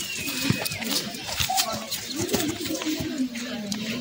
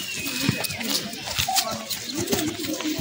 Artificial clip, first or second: first